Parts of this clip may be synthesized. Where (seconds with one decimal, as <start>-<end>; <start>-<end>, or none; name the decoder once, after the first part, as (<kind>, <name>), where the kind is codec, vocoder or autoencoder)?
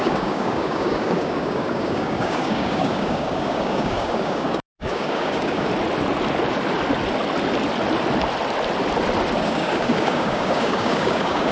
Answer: 0.0-5.7 (codec, DAC); 9.4-11.5